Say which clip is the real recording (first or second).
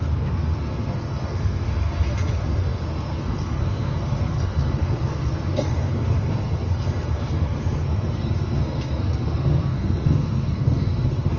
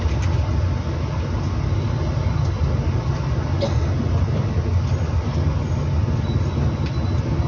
second